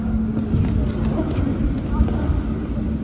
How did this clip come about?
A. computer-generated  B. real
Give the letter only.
B